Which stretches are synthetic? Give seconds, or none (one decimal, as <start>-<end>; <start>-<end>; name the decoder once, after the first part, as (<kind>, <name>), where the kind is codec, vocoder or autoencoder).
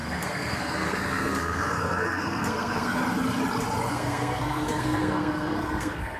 0.0-3.0 (codec, SNAC); 3.9-6.2